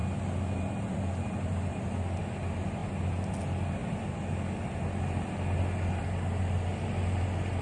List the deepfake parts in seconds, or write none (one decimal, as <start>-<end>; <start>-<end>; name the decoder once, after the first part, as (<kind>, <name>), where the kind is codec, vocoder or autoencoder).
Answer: none